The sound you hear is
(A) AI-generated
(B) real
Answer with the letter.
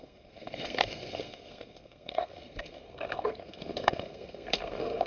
A